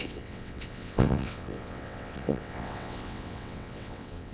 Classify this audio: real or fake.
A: fake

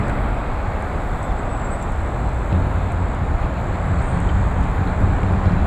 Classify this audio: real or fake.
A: real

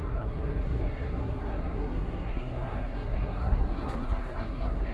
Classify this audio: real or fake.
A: fake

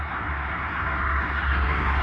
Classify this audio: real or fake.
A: fake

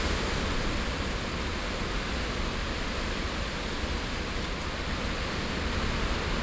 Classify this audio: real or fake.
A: real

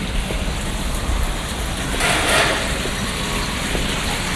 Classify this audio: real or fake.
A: real